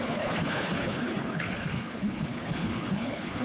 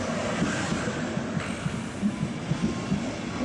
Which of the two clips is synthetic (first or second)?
first